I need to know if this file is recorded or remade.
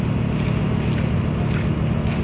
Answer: recorded